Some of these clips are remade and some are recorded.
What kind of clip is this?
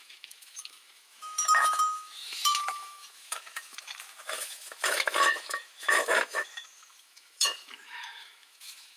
remade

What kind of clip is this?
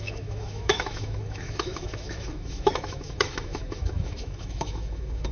remade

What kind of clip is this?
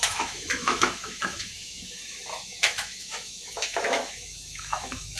remade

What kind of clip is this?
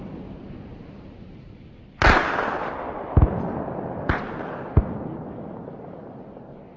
recorded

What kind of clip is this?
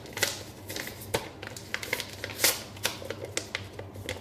recorded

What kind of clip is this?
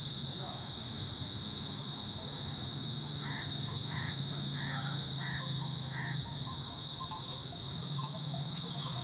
remade